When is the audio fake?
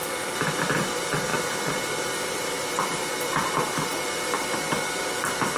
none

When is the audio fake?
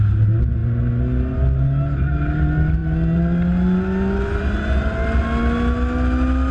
none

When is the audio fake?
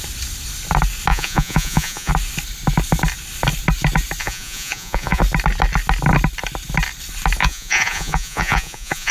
1.1-2.1 (vocoder, Vocos); 4.2-5.2; 7.4-9.1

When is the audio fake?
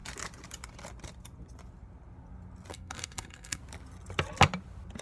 2.7-3.6 (codec, SNAC)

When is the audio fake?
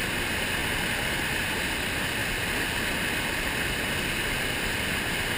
none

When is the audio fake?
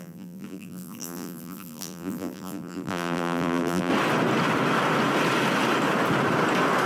0.0-3.9 (vocoder, BigVGAN v2)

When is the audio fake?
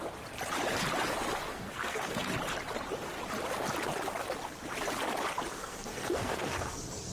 1.5-2.3 (codec, SNAC); 5.6-7.1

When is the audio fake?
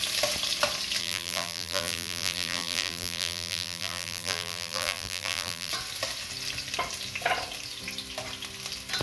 1.0-5.7 (vocoder, BigVGAN v2)